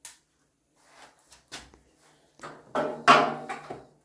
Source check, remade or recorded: recorded